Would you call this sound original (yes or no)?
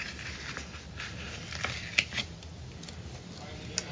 yes